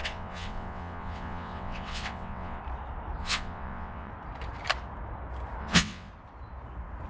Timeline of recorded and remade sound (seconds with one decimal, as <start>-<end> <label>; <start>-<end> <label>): 0.0-2.6 remade; 2.6-3.2 recorded; 3.2-4.1 remade; 4.1-5.6 recorded; 5.6-6.1 remade; 6.1-7.1 recorded